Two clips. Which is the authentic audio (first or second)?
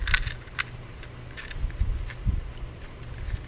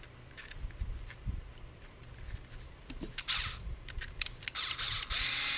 first